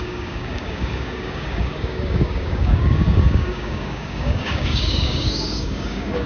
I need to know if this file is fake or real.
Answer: fake